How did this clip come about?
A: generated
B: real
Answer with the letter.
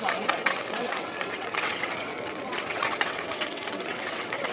A